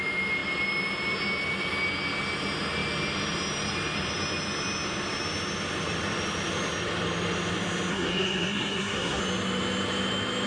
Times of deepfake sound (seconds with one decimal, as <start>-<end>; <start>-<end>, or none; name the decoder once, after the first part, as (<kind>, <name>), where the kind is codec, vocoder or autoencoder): 7.9-9.2 (codec, SNAC)